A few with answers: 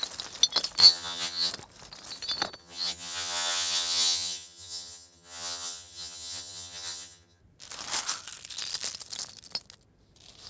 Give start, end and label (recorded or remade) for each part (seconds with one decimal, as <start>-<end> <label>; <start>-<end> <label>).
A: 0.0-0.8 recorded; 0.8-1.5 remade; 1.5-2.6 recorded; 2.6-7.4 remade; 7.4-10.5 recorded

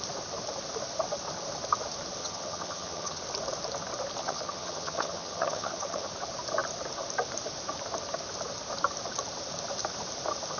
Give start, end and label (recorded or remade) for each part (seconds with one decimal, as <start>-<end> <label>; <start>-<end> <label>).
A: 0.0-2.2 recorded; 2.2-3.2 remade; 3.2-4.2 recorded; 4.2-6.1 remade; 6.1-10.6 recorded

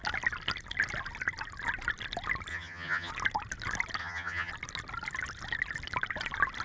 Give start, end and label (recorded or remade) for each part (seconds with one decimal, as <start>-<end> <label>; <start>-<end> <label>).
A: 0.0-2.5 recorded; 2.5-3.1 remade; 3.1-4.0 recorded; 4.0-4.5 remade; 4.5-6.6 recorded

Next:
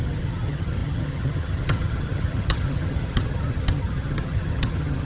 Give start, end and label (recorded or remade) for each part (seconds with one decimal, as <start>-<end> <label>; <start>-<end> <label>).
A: 0.0-5.0 remade

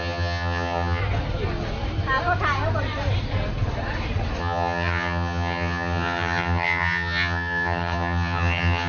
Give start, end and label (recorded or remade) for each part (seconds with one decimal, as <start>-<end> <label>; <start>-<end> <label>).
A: 0.0-1.0 remade; 1.0-4.4 recorded; 4.4-8.9 remade

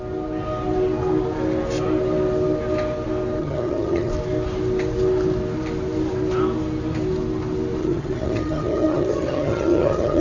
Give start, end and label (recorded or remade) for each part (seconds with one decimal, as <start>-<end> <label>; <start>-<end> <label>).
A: 0.0-3.4 recorded; 3.4-4.1 remade; 4.1-7.8 recorded; 7.8-10.2 remade

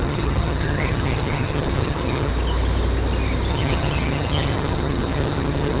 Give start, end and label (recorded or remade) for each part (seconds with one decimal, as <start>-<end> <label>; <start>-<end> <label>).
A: 0.0-2.3 remade; 2.3-3.5 recorded; 3.5-5.8 remade